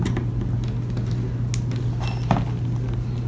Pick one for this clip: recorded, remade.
recorded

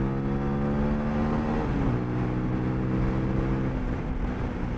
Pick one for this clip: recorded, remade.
recorded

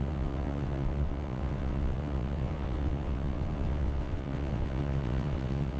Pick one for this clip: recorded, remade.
remade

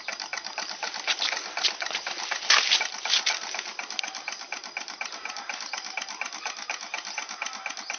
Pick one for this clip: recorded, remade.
recorded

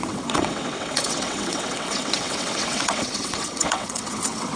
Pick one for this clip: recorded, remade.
remade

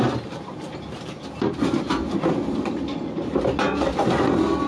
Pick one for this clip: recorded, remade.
recorded